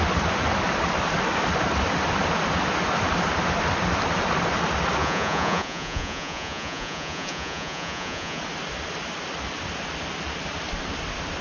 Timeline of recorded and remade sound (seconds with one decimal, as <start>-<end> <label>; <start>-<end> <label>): 0.0-5.0 recorded; 5.0-8.4 remade; 8.4-11.4 recorded